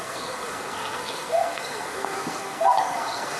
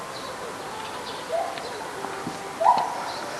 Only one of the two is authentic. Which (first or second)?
second